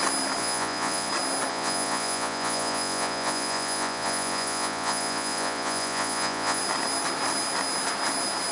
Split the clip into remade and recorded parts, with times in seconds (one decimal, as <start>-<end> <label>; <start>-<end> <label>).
0.0-0.4 recorded; 0.4-1.1 remade; 1.1-1.5 recorded; 1.5-6.6 remade; 6.6-8.5 recorded